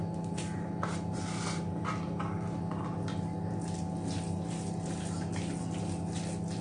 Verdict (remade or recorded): recorded